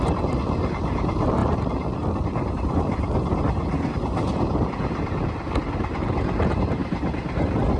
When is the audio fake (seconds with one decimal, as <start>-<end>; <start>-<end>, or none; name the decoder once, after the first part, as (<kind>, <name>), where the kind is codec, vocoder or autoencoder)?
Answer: 0.0-1.4 (vocoder, BigVGAN v2); 2.4-3.3; 5.6-7.8